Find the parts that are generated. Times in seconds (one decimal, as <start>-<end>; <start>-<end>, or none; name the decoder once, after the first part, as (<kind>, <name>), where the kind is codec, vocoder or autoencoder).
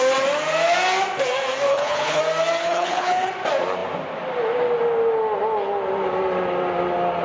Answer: 1.7-2.2 (codec, HILCodec); 2.6-3.3